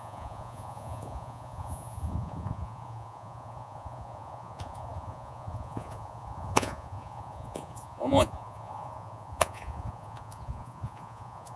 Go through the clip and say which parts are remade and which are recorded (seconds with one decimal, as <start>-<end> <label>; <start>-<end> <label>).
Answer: 0.0-11.6 remade